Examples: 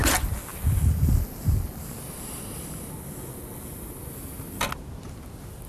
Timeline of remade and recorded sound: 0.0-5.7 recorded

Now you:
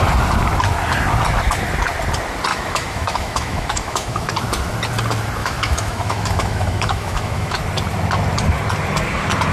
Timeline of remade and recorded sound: 0.0-2.5 recorded; 2.5-4.3 remade; 4.3-5.4 recorded; 5.4-7.6 remade; 7.6-9.5 recorded